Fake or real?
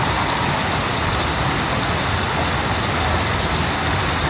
real